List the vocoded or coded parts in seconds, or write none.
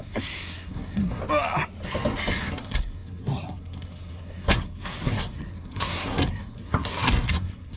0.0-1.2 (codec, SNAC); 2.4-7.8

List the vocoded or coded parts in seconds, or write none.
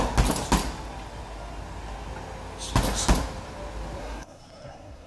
4.0-5.1 (codec, SNAC)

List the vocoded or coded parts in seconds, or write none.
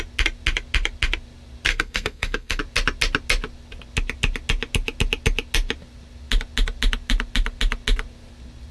1.7-2.6 (codec, SNAC)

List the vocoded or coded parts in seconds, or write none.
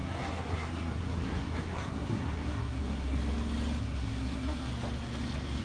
0.0-3.2 (codec, SNAC); 3.8-4.7